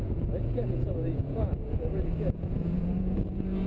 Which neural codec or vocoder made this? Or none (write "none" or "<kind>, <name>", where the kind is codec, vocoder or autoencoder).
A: vocoder, Vocos